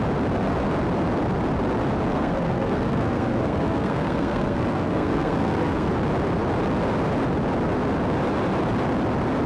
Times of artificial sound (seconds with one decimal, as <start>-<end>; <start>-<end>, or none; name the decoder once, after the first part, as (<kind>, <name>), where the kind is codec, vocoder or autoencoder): 2.1-5.9 (codec, SNAC)